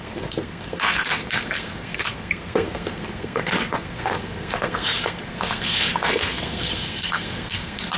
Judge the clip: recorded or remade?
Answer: remade